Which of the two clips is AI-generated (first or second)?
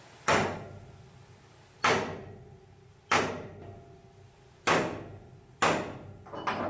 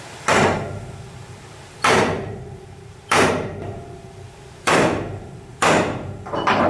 second